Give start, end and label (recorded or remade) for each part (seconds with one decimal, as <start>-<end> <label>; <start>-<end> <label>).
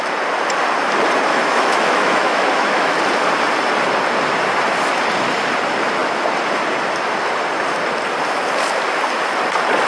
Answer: 0.0-1.3 recorded; 1.3-2.9 remade; 2.9-9.9 recorded